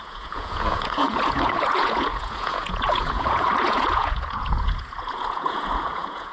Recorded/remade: remade